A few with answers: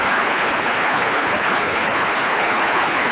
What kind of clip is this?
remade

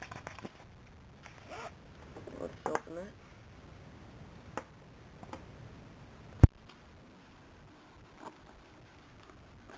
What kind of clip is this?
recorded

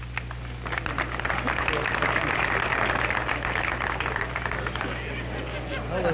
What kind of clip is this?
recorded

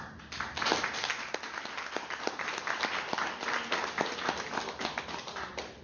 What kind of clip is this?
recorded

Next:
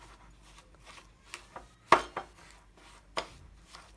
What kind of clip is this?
recorded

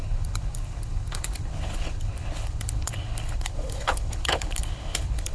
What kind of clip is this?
remade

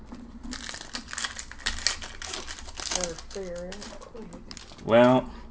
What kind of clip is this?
recorded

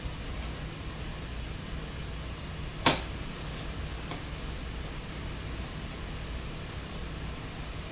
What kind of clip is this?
recorded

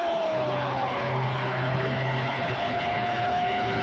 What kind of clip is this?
remade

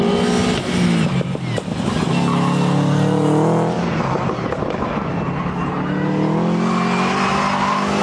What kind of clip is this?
recorded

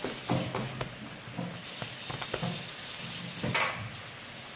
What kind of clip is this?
recorded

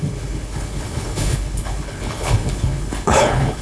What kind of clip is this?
remade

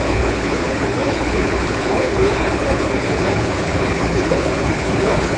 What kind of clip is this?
remade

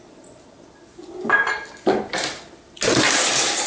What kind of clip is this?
recorded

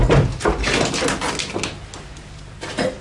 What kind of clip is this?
recorded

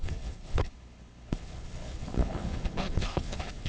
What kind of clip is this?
remade